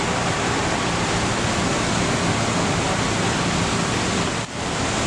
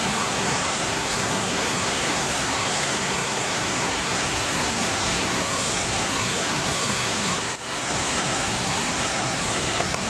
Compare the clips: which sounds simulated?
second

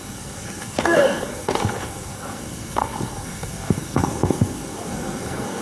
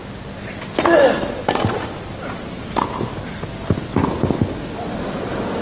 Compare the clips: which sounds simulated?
first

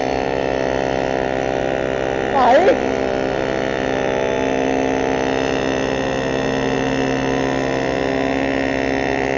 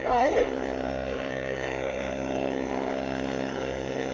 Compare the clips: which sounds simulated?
second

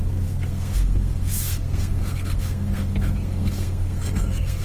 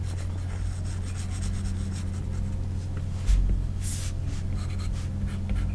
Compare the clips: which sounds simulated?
first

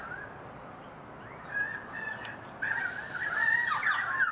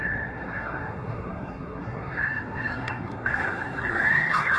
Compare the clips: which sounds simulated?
second